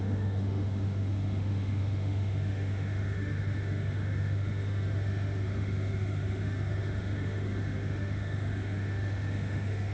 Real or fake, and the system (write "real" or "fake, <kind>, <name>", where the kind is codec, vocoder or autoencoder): fake, autoencoder, DAC-VAE